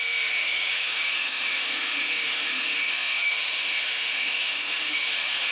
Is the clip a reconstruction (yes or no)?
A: yes